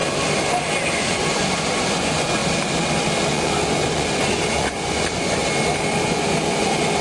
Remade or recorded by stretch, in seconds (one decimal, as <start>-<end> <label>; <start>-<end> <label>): 0.0-0.9 recorded; 0.9-2.4 remade; 2.4-3.3 recorded; 3.3-5.4 remade; 5.4-6.0 recorded; 6.0-7.0 remade